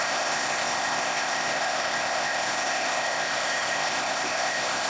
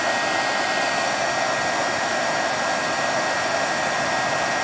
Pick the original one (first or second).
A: second